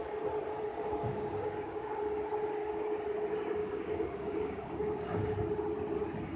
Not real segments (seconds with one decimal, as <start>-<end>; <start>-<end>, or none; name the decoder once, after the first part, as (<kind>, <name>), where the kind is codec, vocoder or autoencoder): 0.7-2.0 (codec, DAC); 3.6-5.3